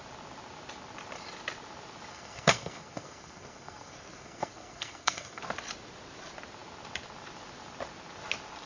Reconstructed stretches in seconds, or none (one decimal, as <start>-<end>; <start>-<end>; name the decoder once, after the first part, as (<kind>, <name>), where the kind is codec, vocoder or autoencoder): 2.1-5.4 (codec, SNAC)